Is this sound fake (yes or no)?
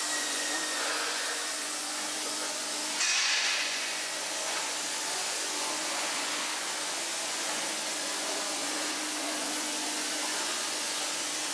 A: yes